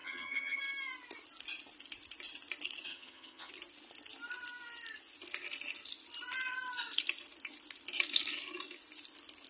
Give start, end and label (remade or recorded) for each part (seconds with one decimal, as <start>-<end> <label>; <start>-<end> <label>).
0.0-0.6 remade; 0.6-2.9 recorded; 2.9-3.5 remade; 3.5-9.5 recorded